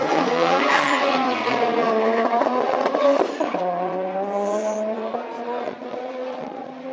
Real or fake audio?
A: fake